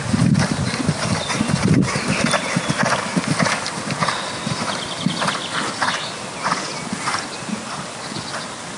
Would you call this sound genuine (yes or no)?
yes